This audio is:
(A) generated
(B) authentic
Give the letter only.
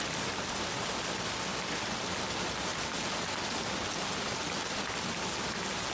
B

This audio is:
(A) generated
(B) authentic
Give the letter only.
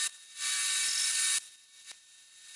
B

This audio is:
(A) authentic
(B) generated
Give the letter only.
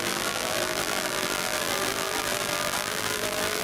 B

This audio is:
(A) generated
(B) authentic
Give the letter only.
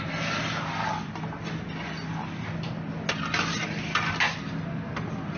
B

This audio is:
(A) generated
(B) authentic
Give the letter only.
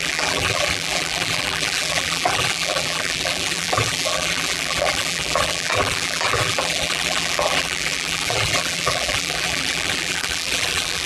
A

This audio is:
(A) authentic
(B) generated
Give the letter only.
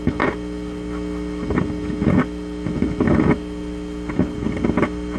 A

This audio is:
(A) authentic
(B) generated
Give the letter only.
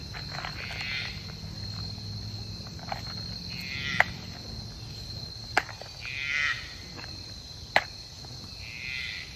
A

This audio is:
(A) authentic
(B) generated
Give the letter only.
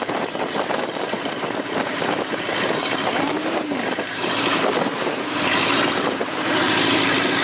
B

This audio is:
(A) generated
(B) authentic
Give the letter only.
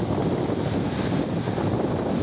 A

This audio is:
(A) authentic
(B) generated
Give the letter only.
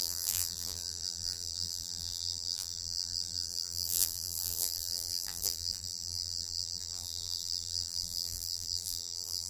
B